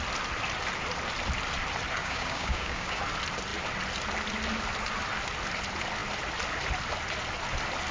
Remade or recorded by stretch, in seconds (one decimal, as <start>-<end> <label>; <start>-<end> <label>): 0.0-2.0 recorded; 2.0-3.0 remade; 3.0-7.9 recorded